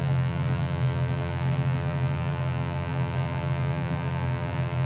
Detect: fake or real fake